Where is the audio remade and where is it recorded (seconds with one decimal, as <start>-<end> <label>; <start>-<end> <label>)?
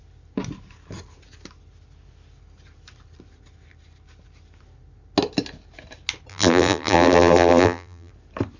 0.0-6.3 recorded; 6.3-8.1 remade; 8.1-8.6 recorded